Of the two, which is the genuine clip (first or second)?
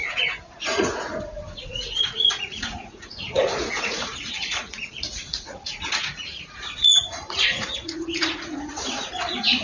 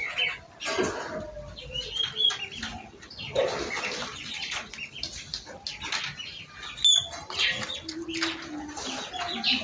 second